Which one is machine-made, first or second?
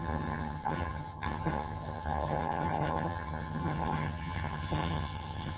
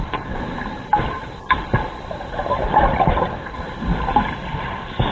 first